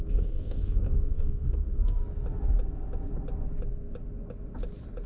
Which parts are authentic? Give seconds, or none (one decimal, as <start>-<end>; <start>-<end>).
2.0-5.1